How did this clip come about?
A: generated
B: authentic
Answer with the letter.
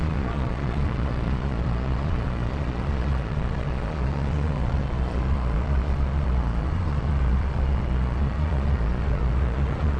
A